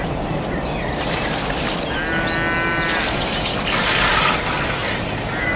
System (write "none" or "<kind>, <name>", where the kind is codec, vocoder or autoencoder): none